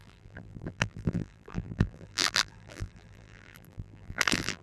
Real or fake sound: fake